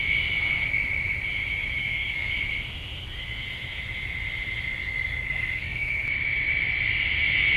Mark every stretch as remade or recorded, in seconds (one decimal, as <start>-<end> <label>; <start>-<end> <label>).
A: 0.0-1.8 recorded; 1.8-2.3 remade; 2.3-4.8 recorded; 4.8-5.9 remade; 5.9-7.6 recorded